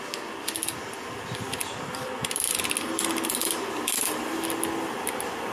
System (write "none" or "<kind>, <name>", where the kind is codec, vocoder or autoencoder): none